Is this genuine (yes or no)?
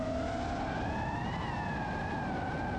yes